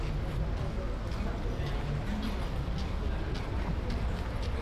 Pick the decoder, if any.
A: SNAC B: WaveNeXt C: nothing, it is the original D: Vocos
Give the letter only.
C